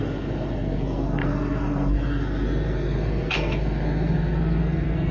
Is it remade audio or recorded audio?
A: remade